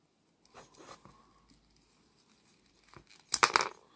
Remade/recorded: recorded